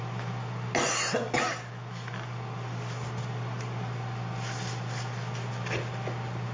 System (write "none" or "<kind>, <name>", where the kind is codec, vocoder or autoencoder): none